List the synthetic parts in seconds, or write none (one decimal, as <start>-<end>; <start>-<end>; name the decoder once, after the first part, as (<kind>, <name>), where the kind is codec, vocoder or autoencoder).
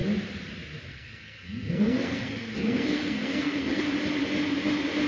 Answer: 0.9-3.8 (codec, SNAC)